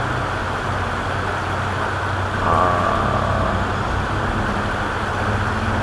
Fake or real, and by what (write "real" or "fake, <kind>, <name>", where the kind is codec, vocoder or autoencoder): real